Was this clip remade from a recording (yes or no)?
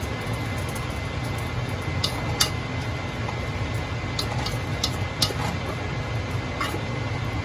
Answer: no